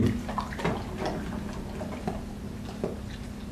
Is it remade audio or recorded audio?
recorded